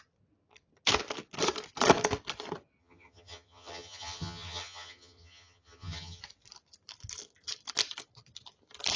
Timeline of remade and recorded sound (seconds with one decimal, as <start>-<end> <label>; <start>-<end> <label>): 0.0-2.8 recorded; 2.8-6.2 remade; 6.2-9.0 recorded